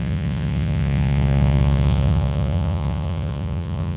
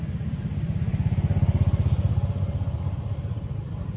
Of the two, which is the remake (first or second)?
first